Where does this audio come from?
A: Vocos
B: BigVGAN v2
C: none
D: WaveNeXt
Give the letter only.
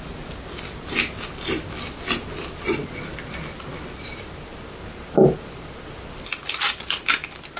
C